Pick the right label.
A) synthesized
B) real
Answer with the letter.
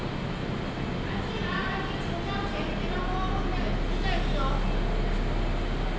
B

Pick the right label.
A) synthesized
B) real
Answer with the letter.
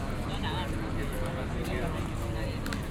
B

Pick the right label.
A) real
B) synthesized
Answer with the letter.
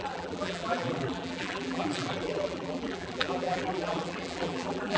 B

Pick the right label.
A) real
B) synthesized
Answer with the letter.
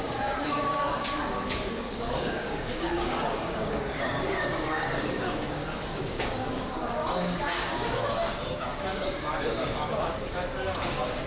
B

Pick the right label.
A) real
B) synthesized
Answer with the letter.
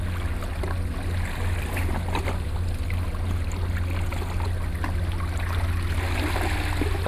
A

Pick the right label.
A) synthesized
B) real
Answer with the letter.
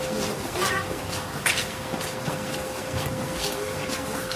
A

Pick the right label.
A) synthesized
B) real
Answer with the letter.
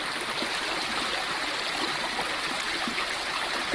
B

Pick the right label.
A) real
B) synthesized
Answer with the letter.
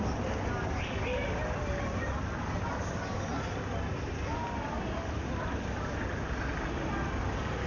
A